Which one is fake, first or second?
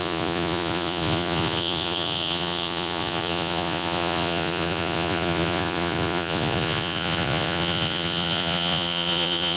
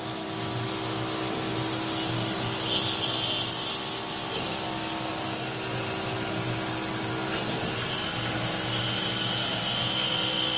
first